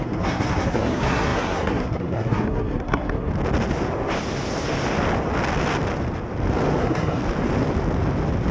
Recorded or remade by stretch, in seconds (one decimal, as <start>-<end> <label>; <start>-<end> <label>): 0.0-3.3 remade; 3.3-6.8 recorded; 6.8-7.2 remade; 7.2-8.5 recorded